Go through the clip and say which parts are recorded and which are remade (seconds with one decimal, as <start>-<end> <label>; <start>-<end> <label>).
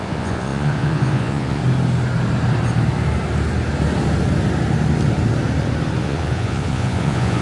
0.0-1.6 remade; 1.6-6.0 recorded; 6.0-7.4 remade